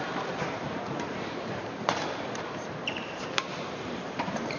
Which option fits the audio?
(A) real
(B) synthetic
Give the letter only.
B